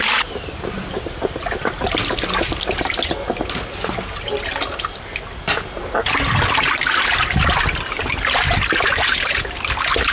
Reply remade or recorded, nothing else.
recorded